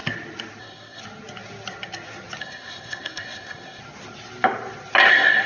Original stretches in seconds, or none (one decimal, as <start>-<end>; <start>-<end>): 0.0-0.6; 1.0-2.4; 3.8-5.1